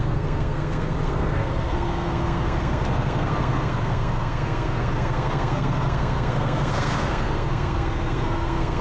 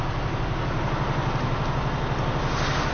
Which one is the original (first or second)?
second